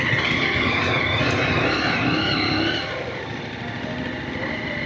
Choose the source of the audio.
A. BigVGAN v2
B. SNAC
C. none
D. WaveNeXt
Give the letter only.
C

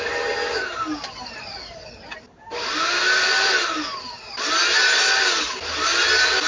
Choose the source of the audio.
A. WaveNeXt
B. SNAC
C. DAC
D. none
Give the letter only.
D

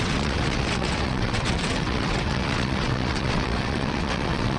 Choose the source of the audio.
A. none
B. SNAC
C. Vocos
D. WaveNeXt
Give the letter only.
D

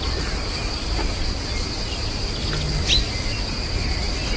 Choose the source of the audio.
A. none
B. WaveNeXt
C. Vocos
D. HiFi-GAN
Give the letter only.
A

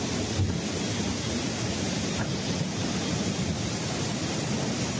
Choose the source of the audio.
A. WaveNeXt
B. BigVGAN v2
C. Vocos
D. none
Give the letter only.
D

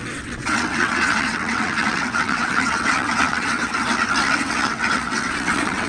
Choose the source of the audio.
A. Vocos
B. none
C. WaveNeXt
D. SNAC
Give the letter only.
C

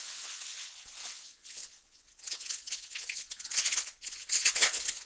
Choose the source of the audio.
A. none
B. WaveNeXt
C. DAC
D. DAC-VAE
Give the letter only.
B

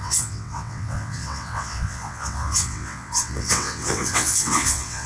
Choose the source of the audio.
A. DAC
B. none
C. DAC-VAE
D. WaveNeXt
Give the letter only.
D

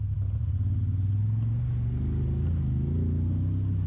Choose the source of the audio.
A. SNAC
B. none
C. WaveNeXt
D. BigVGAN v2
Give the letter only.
B